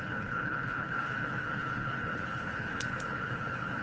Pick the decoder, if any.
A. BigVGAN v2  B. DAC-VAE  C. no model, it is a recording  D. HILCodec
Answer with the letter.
D